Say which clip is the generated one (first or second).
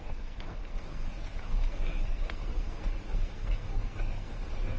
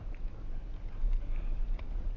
first